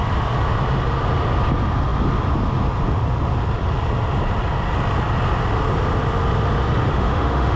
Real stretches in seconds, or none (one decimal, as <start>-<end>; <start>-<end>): 0.0-6.9